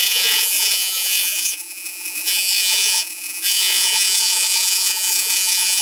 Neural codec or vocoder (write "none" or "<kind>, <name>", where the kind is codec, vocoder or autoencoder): vocoder, Vocos